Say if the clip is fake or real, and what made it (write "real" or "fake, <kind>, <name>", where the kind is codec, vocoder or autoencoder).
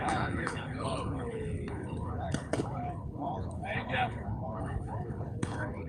fake, codec, HILCodec